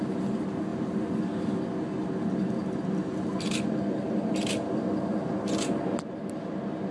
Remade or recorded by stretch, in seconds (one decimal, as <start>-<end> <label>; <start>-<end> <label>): 0.0-6.9 recorded